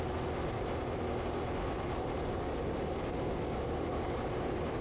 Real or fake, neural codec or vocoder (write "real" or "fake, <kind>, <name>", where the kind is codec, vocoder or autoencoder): real